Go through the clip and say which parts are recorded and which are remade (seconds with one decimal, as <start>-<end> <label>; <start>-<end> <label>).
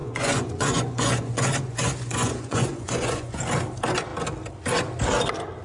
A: 0.0-3.4 remade; 3.4-5.6 recorded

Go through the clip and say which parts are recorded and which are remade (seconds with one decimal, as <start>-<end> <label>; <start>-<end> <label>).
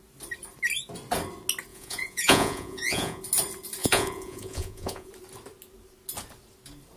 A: 0.0-1.7 recorded; 1.7-3.2 remade; 3.2-3.8 recorded; 3.8-5.1 remade; 5.1-7.0 recorded